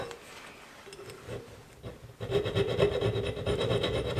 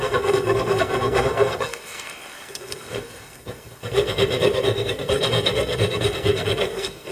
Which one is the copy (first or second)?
second